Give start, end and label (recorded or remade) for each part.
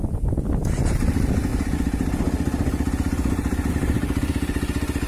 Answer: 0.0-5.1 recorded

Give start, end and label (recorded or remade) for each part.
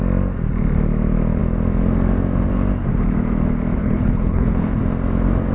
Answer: 0.0-3.8 recorded; 3.8-4.8 remade; 4.8-5.5 recorded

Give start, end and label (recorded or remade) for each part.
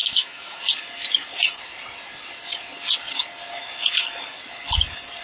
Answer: 0.0-0.6 remade; 0.6-5.2 recorded